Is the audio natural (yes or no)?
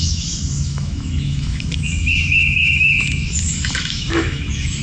no